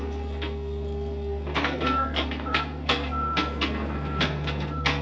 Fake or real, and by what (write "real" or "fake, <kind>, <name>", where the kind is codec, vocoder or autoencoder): fake, codec, SNAC